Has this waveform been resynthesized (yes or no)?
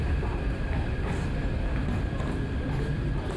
no